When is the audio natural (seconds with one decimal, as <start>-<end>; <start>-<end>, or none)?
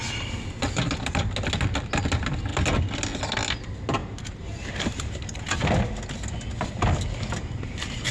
0.0-4.0; 5.4-8.1